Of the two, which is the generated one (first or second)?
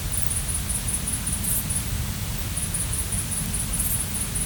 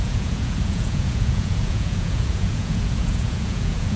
second